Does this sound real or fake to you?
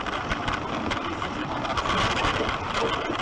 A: real